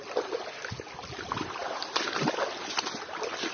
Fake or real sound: real